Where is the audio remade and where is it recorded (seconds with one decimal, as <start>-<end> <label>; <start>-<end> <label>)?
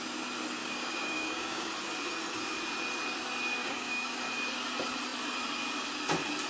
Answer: 0.0-0.6 recorded; 0.6-1.7 remade; 1.7-3.6 recorded; 3.6-4.2 remade; 4.2-6.5 recorded